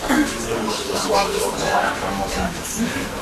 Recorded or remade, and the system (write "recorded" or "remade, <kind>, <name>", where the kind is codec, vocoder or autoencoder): remade, codec, SNAC